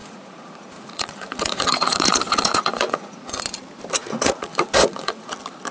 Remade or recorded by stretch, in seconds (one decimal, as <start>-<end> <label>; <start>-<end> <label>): 0.0-3.4 remade; 3.4-4.0 recorded; 4.0-5.3 remade; 5.3-5.7 recorded